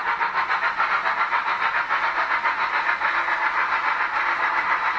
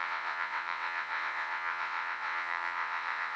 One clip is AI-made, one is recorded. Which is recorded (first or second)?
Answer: first